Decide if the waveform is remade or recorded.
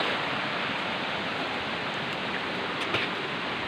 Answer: recorded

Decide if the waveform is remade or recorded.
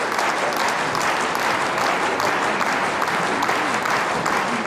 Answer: recorded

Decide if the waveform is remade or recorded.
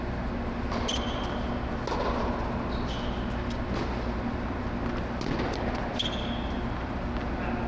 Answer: recorded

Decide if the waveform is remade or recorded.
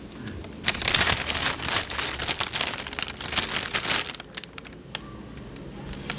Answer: recorded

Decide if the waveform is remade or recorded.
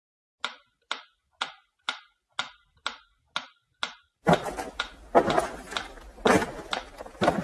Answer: recorded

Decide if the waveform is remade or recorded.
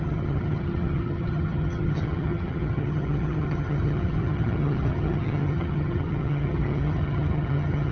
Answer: remade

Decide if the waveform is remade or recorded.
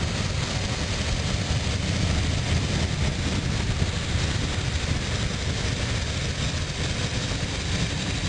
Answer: recorded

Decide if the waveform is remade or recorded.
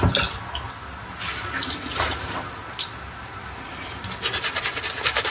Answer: recorded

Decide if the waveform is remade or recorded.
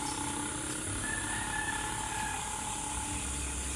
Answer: recorded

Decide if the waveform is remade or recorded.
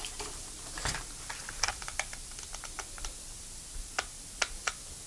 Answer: recorded